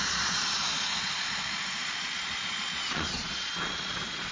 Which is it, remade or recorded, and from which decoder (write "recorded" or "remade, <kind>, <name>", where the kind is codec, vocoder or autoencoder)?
remade, vocoder, Vocos